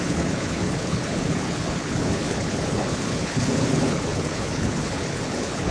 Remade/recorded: remade